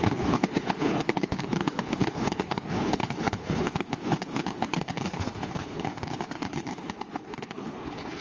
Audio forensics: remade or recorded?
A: remade